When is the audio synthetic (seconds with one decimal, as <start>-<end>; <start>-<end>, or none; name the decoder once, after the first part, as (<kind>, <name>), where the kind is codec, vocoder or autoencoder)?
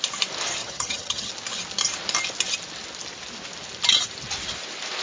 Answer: 0.6-1.3 (vocoder, HiFi-GAN)